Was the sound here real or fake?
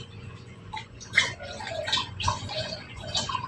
fake